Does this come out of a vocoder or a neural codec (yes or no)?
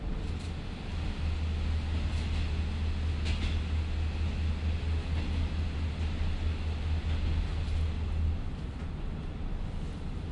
no